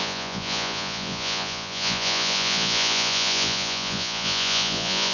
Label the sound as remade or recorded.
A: remade